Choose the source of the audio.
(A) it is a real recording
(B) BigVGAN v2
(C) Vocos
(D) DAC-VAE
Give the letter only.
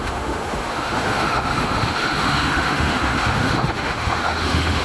D